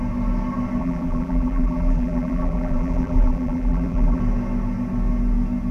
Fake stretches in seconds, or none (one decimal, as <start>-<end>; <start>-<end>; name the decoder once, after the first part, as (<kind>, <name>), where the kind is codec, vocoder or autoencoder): 0.8-4.2 (vocoder, BigVGAN v2)